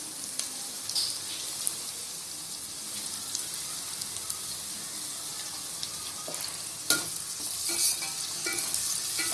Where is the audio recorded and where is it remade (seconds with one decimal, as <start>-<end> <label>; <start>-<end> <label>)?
0.0-9.3 recorded